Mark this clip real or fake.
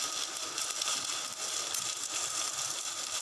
real